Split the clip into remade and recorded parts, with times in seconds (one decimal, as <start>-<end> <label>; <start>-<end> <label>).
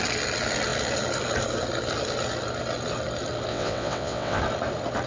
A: 0.0-3.5 recorded; 3.5-4.4 remade; 4.4-5.1 recorded